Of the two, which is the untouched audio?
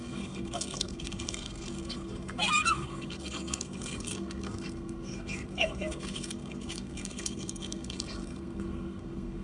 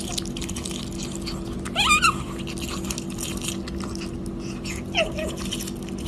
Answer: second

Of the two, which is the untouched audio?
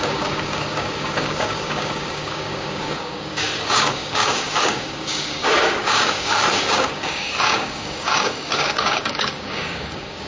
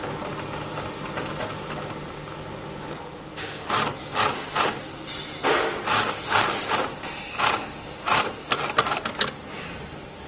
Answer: second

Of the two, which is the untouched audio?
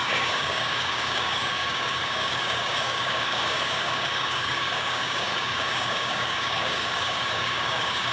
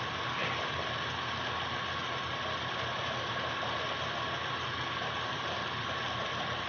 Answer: second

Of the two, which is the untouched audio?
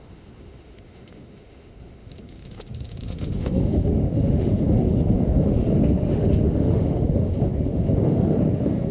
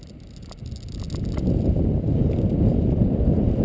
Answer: second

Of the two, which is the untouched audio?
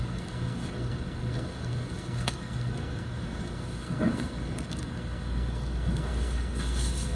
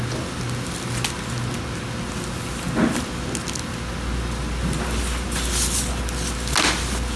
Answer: second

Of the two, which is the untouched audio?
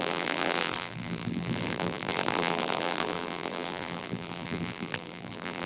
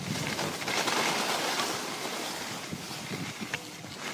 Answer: second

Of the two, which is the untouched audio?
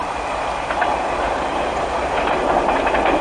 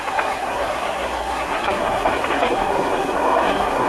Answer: first